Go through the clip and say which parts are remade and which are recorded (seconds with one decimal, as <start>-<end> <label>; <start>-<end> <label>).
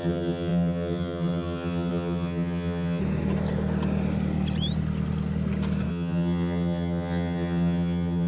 0.0-3.0 remade; 3.0-5.9 recorded; 5.9-8.3 remade